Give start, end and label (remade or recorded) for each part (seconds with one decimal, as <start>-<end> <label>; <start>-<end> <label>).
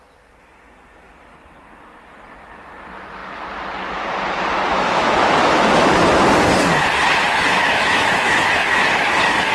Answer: 0.0-4.7 recorded; 4.7-6.0 remade; 6.0-7.3 recorded; 7.3-8.8 remade; 8.8-9.5 recorded